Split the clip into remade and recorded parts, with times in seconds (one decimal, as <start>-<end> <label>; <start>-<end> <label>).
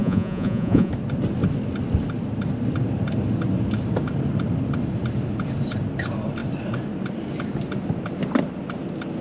0.0-0.9 remade; 0.9-9.2 recorded